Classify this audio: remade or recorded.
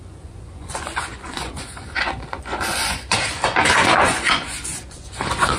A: remade